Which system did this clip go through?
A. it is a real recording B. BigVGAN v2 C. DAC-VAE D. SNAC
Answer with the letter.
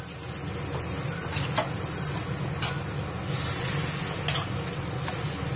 A